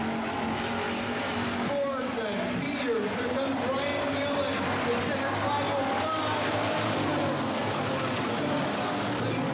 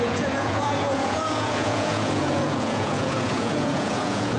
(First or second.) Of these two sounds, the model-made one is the second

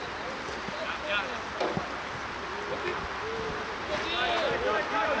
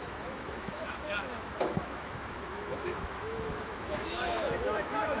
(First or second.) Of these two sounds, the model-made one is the second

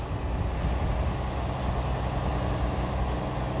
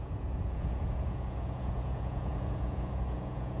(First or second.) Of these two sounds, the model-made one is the second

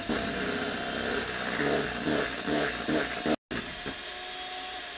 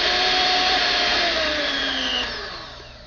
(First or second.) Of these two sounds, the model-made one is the second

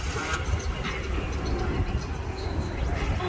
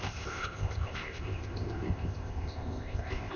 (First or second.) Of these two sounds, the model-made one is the second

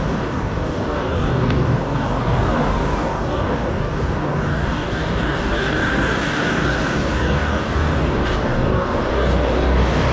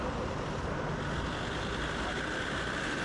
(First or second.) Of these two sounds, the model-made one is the first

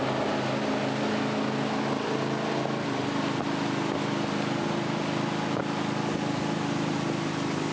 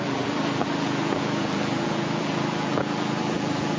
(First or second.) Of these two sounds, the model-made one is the second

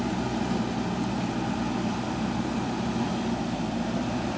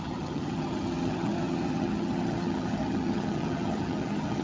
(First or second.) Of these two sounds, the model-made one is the second